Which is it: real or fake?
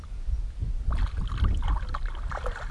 real